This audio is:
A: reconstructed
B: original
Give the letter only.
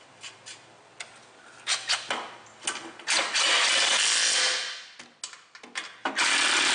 B